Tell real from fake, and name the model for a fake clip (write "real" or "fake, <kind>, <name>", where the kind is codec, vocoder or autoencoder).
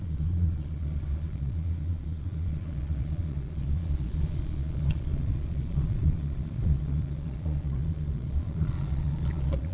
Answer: fake, vocoder, Vocos